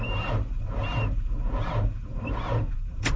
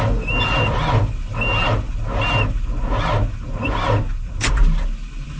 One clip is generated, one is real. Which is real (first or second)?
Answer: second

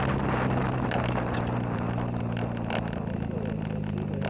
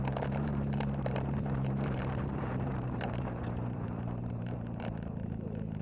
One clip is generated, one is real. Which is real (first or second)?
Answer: first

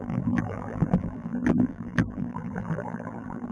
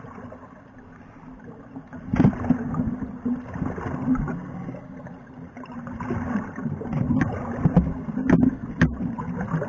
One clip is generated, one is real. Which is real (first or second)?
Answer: second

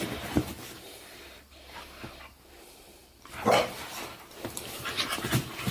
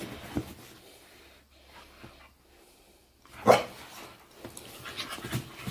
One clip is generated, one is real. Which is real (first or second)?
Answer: second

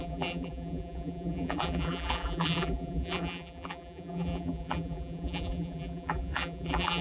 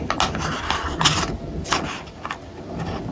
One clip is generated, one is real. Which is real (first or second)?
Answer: second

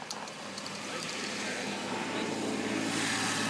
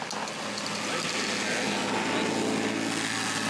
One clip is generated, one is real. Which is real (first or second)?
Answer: second